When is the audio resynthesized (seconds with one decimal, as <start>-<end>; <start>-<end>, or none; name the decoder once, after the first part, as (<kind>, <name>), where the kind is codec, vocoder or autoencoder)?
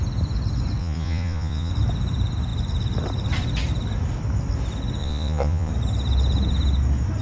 0.8-1.7 (vocoder, Vocos); 5.0-5.7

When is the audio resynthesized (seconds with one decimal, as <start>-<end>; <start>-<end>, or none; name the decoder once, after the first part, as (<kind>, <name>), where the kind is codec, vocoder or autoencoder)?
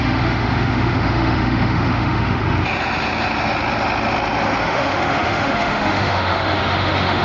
0.0-2.4 (autoencoder, DAC-VAE); 4.6-7.2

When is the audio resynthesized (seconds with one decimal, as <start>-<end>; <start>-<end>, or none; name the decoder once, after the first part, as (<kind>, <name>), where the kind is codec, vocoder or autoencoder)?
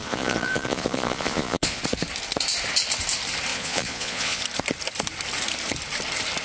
0.0-1.8 (vocoder, Vocos); 3.5-4.4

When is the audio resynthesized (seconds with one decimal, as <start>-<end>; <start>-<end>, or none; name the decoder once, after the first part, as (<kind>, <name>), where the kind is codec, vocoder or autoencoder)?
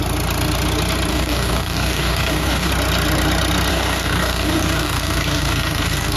1.1-2.7 (codec, DAC); 3.7-6.2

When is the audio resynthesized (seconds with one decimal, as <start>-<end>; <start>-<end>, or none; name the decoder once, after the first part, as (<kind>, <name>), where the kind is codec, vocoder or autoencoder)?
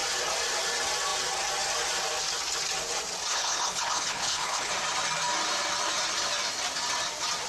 3.3-4.7 (codec, HILCodec)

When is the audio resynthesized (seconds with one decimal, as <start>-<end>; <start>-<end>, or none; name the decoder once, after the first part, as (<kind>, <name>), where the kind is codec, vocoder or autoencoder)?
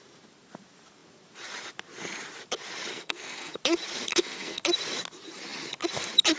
2.9-3.5 (codec, SNAC); 4.1-4.6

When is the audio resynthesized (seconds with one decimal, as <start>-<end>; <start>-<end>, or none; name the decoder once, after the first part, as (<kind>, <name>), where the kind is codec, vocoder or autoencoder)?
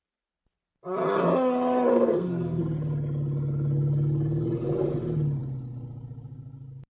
1.9-2.6 (codec, SNAC)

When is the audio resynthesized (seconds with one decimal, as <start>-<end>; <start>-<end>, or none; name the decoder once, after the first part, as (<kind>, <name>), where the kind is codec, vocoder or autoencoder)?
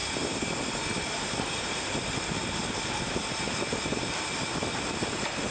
none